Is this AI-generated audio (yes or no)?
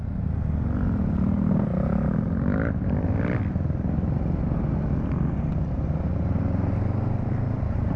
no